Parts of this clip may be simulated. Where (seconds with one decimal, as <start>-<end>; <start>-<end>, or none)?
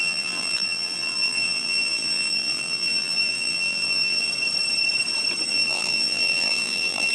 0.0-4.3; 5.5-7.1